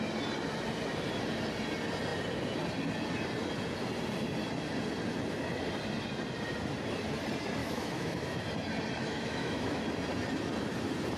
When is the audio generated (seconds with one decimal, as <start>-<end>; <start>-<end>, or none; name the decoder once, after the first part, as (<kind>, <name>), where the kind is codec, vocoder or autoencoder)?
7.6-8.4 (autoencoder, DAC-VAE); 9.0-9.8

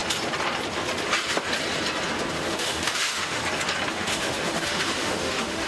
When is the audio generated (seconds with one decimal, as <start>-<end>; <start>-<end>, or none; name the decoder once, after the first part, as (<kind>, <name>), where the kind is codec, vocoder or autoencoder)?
2.3-3.4 (autoencoder, DAC-VAE); 3.9-5.7